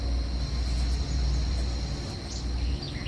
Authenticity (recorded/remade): recorded